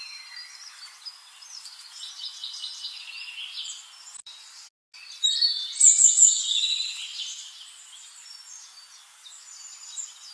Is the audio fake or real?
real